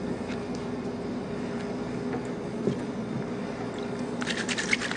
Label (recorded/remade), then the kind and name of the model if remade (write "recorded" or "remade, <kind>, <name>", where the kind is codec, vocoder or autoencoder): recorded